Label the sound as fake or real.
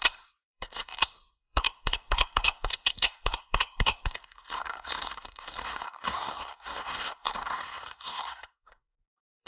fake